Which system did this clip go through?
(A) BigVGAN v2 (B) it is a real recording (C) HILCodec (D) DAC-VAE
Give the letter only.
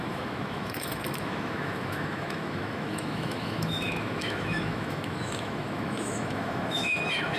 D